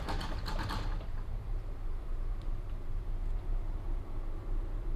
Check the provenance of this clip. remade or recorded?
remade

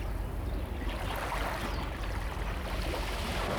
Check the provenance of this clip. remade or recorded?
recorded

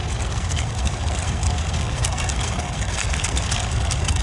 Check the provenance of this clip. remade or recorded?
remade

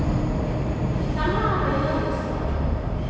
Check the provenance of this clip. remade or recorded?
recorded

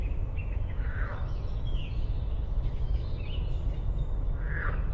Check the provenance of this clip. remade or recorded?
remade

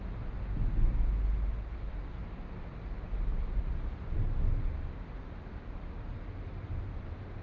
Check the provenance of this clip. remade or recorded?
recorded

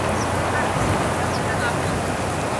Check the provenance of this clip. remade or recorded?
recorded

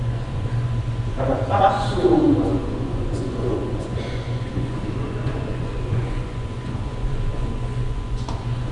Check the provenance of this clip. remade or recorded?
remade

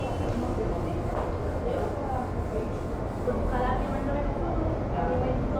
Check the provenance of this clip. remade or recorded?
recorded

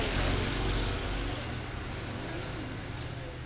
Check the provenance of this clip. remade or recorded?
recorded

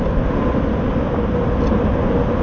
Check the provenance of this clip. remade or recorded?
recorded